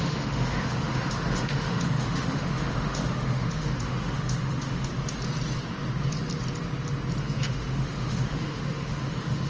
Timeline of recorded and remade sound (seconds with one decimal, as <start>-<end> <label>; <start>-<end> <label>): 0.0-4.9 remade; 4.9-7.2 recorded; 7.2-9.5 remade